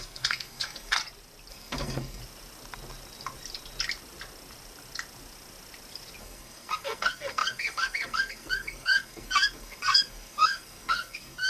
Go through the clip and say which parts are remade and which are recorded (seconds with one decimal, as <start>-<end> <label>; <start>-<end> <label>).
0.0-1.0 remade; 1.0-1.5 recorded; 1.5-2.2 remade; 2.2-6.2 recorded; 6.2-11.5 remade